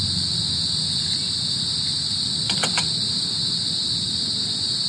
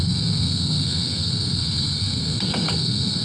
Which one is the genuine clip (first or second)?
first